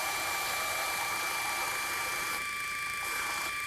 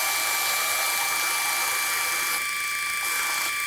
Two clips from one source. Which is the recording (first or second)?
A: second